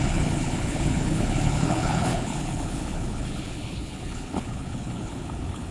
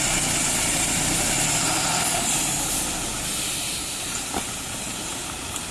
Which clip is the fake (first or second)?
first